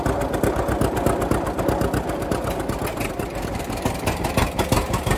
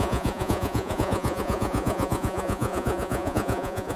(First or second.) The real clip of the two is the first